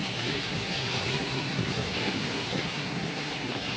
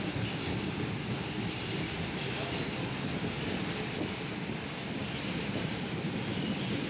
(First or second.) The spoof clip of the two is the first